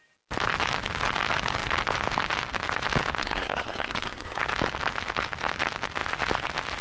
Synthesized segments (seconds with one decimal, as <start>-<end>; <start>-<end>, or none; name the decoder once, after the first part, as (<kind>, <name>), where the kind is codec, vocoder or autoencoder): 3.2-4.4 (codec, SNAC)